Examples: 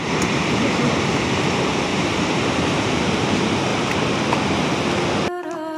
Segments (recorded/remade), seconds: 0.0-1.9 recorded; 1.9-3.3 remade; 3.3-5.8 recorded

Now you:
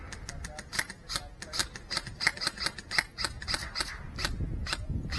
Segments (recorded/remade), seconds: 0.0-5.2 recorded